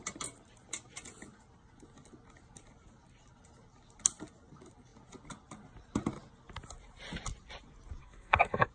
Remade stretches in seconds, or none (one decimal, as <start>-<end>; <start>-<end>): 8.0-8.7